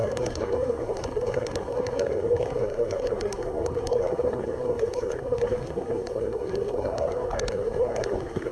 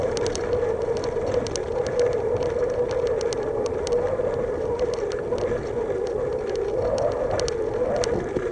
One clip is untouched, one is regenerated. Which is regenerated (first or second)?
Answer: first